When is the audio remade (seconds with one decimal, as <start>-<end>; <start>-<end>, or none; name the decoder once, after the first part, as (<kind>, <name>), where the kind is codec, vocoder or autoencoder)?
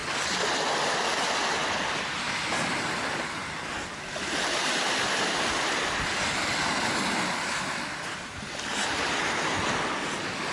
none